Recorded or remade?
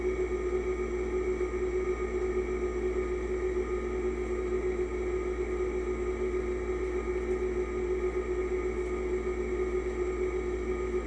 recorded